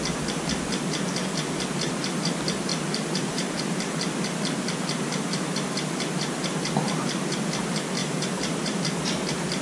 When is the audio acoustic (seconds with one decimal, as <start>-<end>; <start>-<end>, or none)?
0.0-2.7; 3.6-8.0; 8.8-9.6